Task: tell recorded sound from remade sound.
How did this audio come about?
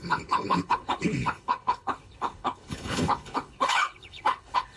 remade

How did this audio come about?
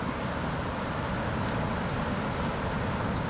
recorded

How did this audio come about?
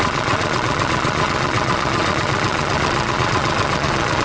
remade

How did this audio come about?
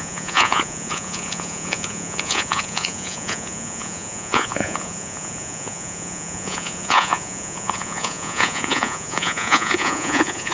remade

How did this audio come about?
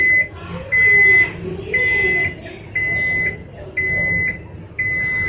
recorded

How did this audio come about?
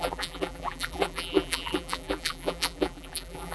remade